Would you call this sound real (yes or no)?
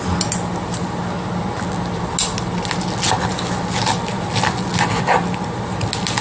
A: yes